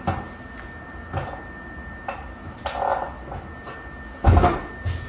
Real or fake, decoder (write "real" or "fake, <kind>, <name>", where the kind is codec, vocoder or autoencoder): real